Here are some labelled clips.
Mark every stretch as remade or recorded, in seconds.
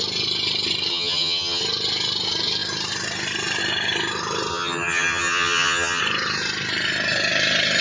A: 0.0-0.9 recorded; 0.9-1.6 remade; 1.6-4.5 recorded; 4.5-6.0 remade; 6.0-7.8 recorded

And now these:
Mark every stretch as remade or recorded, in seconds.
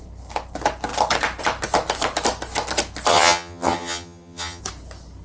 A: 0.0-3.1 recorded; 3.1-4.6 remade; 4.6-5.2 recorded